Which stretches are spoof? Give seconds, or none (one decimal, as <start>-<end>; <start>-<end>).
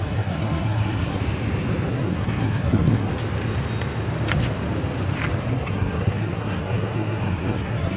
0.0-1.2; 1.9-3.1; 5.5-8.0